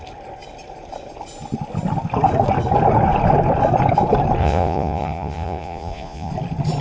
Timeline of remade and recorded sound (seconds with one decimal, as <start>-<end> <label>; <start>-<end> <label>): 0.0-4.4 recorded; 4.4-6.3 remade; 6.3-6.8 recorded